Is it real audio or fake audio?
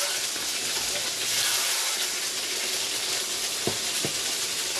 real